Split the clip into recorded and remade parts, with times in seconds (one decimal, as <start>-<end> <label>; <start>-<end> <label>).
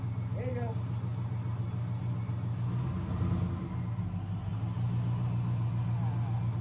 0.0-6.6 recorded